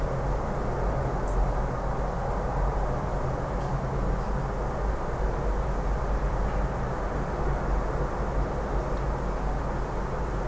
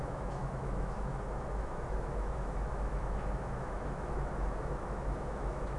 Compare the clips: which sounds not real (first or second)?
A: second